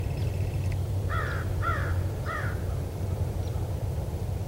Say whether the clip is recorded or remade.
remade